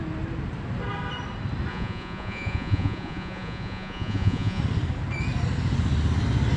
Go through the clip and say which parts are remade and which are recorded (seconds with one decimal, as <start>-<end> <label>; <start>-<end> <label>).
0.0-1.7 recorded; 1.7-4.6 remade; 4.6-6.6 recorded